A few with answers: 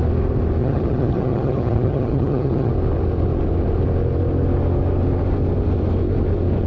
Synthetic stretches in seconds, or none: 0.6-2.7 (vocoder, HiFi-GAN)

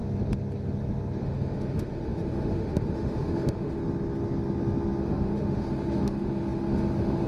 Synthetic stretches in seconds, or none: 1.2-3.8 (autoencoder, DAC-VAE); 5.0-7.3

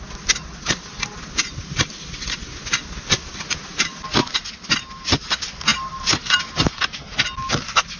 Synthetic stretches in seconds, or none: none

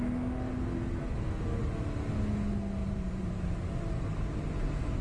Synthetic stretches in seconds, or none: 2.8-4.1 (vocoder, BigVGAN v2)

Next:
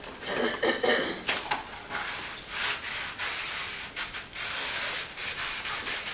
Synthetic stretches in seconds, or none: 5.2-6.1 (vocoder, BigVGAN v2)

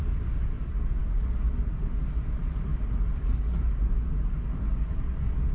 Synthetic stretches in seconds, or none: none

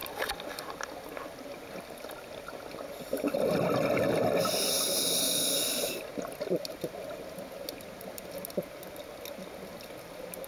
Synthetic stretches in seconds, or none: none

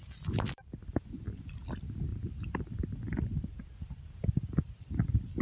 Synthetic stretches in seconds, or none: 0.0-1.0 (vocoder, BigVGAN v2); 2.1-4.9